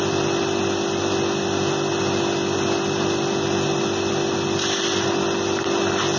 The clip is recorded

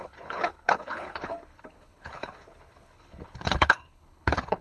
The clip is remade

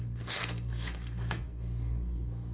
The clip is remade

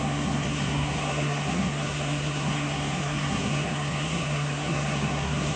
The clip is remade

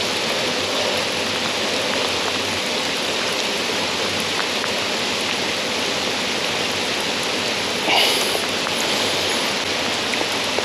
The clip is recorded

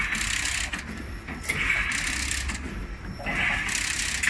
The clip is recorded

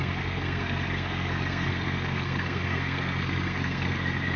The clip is remade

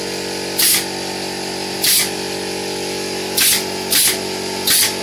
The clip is recorded